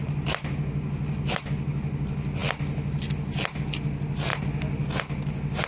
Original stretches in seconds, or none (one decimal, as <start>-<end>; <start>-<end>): 0.0-5.7